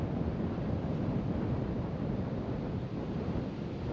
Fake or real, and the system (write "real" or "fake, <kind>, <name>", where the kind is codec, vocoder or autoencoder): real